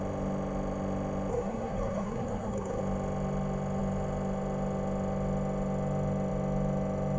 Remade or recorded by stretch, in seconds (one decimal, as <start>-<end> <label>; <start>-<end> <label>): 0.0-1.3 recorded; 1.3-2.8 remade; 2.8-7.2 recorded